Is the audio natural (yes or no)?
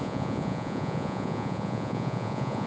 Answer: no